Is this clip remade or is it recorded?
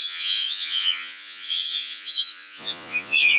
remade